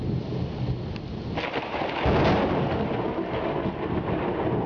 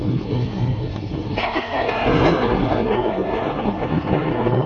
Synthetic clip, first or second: second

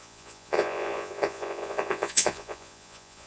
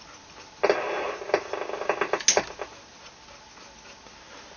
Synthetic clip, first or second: first